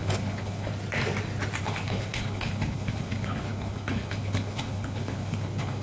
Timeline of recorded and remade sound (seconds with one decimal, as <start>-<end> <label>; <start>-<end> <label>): 0.0-0.7 remade; 0.7-1.6 recorded; 1.6-5.8 remade